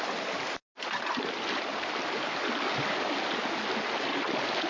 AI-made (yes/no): no